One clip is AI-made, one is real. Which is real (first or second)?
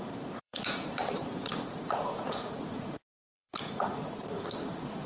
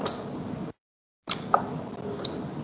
second